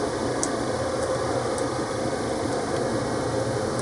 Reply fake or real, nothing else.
real